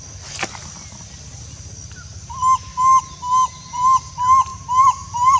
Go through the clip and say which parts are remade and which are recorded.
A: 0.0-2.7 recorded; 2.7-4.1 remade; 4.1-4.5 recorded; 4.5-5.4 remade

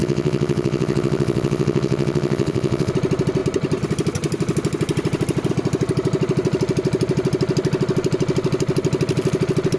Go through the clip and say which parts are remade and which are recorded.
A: 0.0-2.9 remade; 2.9-9.8 recorded

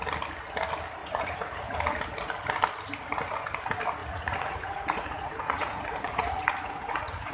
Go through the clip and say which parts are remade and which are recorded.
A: 0.0-1.0 recorded; 1.0-1.7 remade; 1.7-4.0 recorded; 4.0-7.3 remade

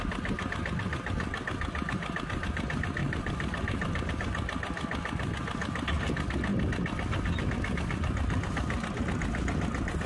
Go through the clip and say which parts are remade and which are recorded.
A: 0.0-3.0 recorded; 3.0-4.1 remade; 4.1-10.1 recorded

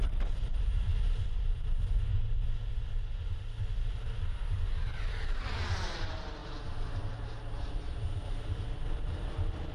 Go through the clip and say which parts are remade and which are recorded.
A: 0.0-9.7 recorded